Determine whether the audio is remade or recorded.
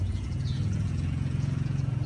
remade